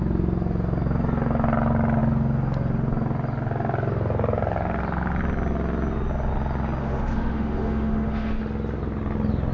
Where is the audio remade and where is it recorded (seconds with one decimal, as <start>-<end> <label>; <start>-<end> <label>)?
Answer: 0.0-6.8 recorded; 6.8-8.4 remade; 8.4-9.5 recorded